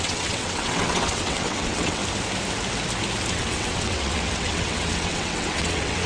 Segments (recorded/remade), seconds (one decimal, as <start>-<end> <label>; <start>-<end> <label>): 0.0-2.0 remade; 2.0-3.3 recorded; 3.3-6.1 remade